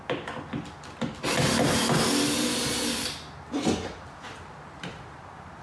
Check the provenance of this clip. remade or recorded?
recorded